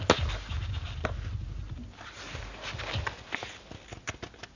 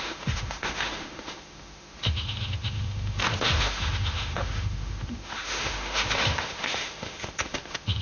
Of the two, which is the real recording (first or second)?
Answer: first